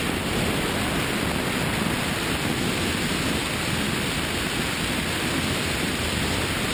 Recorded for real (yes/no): yes